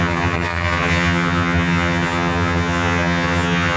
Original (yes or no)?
no